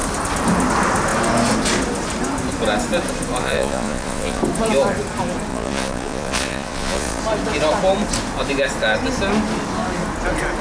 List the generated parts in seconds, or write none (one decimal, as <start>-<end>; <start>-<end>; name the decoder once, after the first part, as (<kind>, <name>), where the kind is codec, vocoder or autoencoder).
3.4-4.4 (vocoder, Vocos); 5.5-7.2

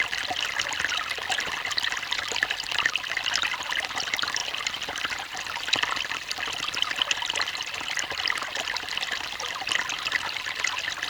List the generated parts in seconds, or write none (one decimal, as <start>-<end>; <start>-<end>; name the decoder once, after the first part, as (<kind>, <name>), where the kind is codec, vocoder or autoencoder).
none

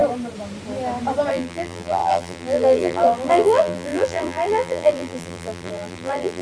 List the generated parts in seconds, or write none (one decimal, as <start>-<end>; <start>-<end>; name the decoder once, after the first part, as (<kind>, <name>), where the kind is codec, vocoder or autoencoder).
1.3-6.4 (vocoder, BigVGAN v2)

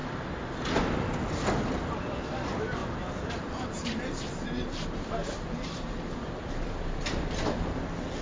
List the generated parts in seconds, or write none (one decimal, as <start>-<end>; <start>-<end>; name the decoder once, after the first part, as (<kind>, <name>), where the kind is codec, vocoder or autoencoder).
2.8-4.0 (vocoder, BigVGAN v2); 5.2-8.2

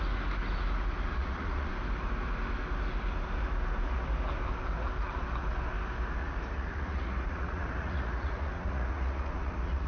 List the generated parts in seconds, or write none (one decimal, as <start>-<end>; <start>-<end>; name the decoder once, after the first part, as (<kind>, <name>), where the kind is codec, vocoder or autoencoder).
1.1-1.7 (vocoder, Vocos); 6.2-9.9

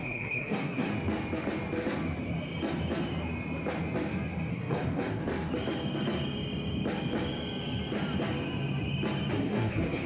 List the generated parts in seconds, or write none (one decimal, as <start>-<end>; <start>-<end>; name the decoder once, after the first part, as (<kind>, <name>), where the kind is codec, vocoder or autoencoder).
0.0-0.9 (codec, SNAC); 4.5-5.2; 9.3-10.1

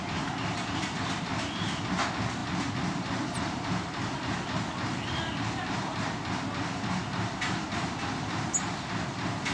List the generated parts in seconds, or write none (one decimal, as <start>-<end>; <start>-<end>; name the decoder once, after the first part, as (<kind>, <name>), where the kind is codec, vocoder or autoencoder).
none